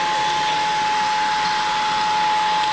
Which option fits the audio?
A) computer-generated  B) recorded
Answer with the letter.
B